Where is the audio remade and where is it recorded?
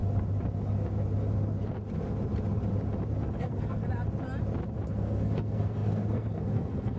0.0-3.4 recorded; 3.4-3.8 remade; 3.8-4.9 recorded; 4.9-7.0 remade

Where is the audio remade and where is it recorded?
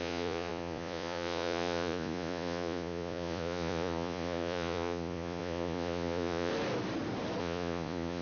0.0-6.5 remade; 6.5-7.4 recorded; 7.4-8.2 remade